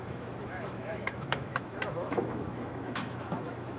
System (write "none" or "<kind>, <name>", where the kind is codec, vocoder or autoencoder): autoencoder, DAC-VAE